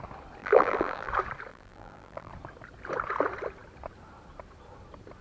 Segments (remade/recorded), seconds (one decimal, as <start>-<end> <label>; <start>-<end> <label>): 0.0-0.4 recorded; 0.4-1.1 remade; 1.1-1.5 recorded; 1.5-2.3 remade; 2.3-5.2 recorded